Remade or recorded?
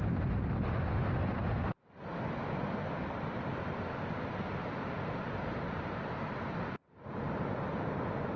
recorded